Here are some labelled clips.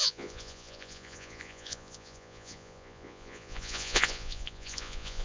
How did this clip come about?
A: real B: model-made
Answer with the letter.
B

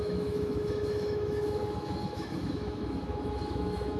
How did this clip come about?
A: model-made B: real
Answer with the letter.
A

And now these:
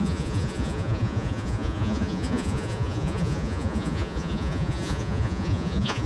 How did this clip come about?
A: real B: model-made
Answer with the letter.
B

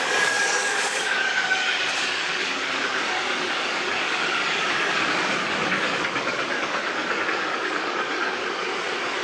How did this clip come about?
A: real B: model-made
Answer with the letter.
B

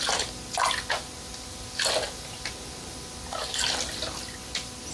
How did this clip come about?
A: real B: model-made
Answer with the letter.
A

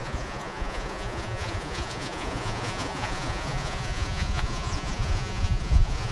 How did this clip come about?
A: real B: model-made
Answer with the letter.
B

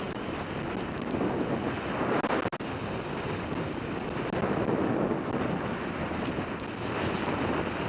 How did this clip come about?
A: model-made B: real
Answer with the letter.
B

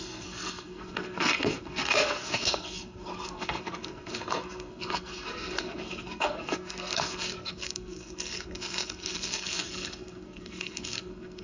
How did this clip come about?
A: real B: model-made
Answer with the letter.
B